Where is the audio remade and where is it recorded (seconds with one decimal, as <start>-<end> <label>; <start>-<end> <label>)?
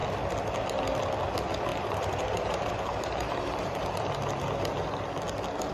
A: 0.0-1.7 recorded; 1.7-3.9 remade; 3.9-5.7 recorded